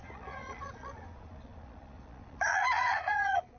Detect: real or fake fake